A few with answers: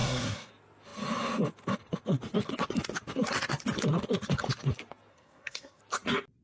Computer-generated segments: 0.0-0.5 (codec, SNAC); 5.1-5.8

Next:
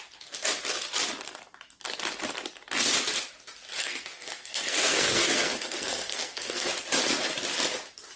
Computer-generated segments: 3.8-6.7 (codec, SNAC)

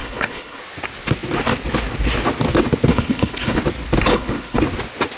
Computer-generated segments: 0.0-0.6 (codec, HILCodec); 2.9-3.6; 4.1-4.6